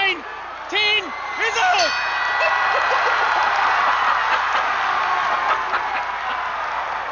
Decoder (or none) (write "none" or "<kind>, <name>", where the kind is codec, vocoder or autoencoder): none